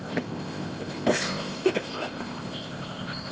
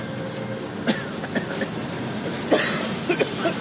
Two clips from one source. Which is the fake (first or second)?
first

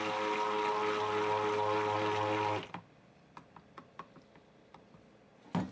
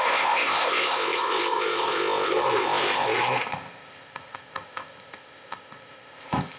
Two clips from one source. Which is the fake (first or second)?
second